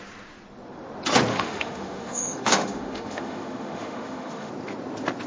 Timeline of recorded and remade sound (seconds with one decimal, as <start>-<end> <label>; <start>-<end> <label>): 0.0-1.3 recorded; 1.3-4.5 remade; 4.5-5.3 recorded